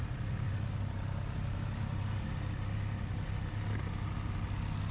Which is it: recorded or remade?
recorded